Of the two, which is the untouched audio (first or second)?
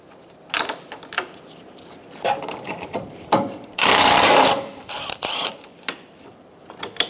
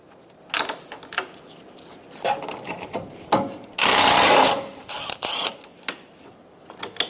second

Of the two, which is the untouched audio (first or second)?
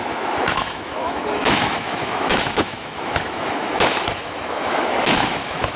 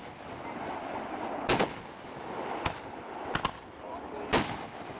second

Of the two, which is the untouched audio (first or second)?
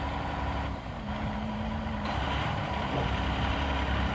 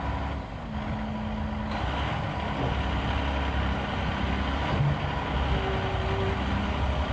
second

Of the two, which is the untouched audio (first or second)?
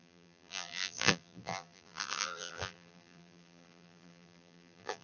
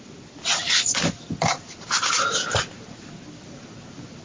second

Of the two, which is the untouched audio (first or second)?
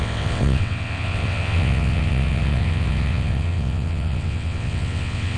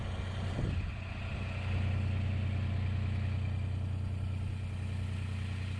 second